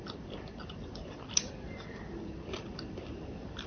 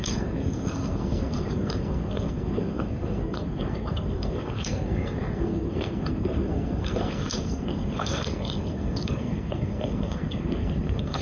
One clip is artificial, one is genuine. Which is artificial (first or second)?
second